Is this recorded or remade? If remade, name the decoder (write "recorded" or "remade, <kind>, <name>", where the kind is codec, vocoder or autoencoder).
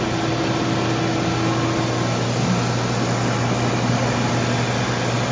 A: recorded